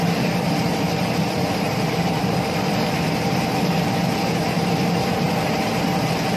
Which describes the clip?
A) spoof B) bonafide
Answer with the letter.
A